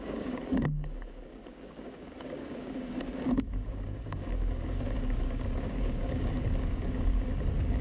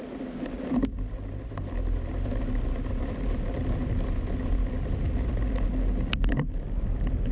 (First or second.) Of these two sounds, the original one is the second